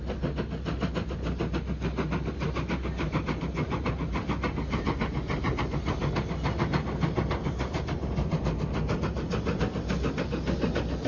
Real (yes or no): yes